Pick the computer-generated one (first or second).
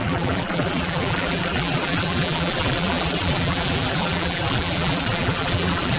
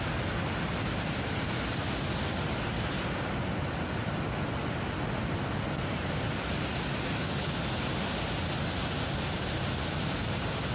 first